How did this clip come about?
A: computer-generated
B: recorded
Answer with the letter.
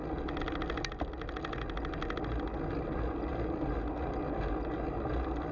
B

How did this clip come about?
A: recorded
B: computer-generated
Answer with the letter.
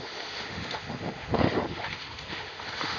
B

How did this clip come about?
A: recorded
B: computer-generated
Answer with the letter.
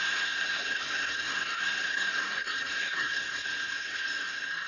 B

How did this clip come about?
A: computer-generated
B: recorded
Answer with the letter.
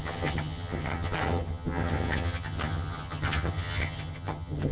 A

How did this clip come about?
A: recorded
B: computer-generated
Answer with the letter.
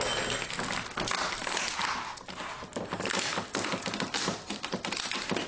A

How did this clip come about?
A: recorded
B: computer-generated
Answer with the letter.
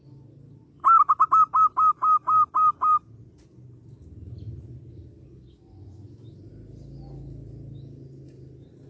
A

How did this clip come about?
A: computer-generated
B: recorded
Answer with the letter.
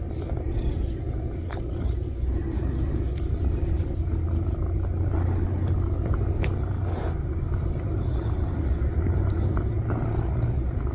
B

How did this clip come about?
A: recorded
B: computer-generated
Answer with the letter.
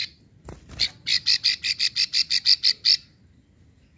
A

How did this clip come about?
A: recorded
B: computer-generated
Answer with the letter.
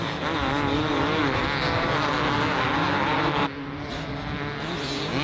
A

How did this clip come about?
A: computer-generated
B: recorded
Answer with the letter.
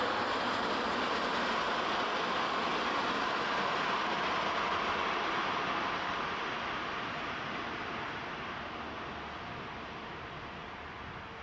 B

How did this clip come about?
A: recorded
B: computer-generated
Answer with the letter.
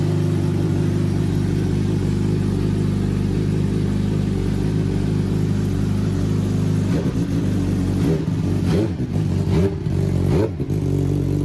A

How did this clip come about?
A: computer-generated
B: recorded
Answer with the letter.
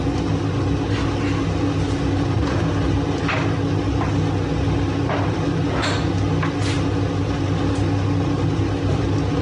B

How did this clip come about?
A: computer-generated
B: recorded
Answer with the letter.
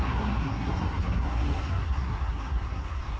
A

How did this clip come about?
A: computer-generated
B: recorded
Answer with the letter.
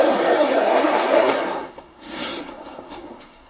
A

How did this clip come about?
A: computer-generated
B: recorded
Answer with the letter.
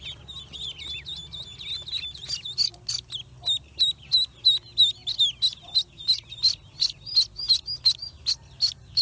B